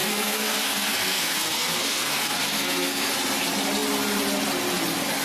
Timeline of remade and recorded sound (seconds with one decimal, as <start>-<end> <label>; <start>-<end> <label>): 0.0-3.1 remade; 3.1-5.2 recorded